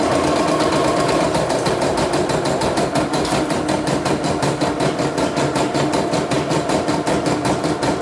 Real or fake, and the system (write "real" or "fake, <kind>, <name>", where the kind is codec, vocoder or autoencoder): real